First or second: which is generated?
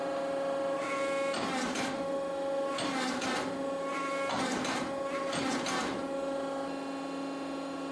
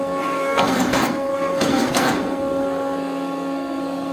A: second